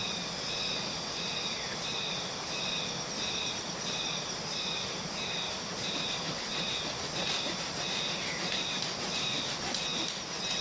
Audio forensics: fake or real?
real